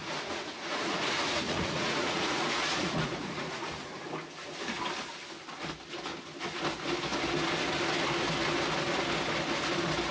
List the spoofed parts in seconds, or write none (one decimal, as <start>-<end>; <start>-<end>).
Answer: 0.0-4.0

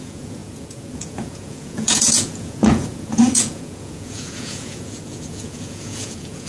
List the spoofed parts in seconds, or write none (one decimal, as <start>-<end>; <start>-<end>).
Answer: 0.0-6.5